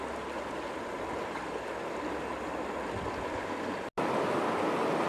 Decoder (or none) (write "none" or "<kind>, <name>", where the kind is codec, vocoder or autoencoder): none